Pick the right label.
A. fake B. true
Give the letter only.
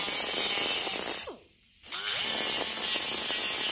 B